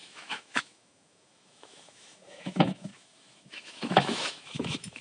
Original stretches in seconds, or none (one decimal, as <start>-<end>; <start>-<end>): none